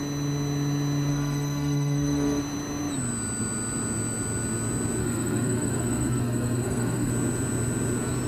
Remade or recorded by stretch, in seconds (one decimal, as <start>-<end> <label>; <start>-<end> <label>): 0.0-1.1 recorded; 1.1-2.4 remade; 2.4-5.0 recorded; 5.0-7.1 remade; 7.1-8.3 recorded